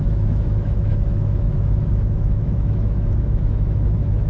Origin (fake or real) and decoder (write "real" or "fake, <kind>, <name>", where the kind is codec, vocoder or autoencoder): fake, autoencoder, DAC-VAE